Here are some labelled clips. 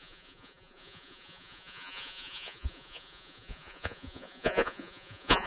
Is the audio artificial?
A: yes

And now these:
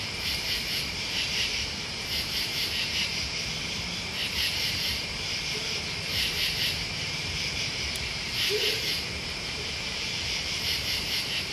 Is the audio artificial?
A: yes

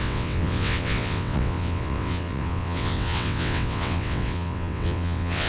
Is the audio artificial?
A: yes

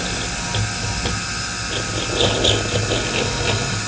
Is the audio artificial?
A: no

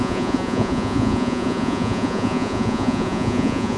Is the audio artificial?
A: yes